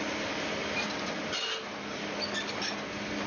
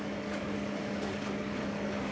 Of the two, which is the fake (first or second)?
second